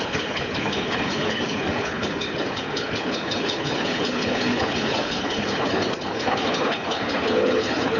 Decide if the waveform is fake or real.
fake